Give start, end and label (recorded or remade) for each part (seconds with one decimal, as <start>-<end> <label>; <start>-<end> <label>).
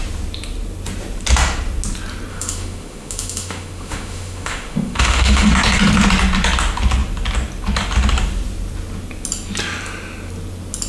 0.0-2.3 recorded; 2.3-5.5 remade; 5.5-10.9 recorded